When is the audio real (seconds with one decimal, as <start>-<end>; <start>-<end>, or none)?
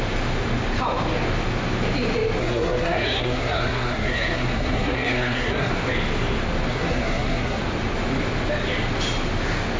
0.0-2.4; 5.7-6.7; 7.6-9.8